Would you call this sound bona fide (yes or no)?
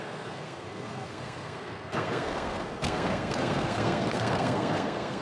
no